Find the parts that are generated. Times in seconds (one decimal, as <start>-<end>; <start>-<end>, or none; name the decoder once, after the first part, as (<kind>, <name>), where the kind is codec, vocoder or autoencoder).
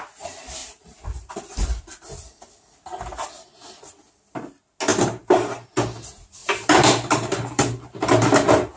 0.6-1.3 (vocoder, BigVGAN v2); 4.9-5.7; 6.4-8.1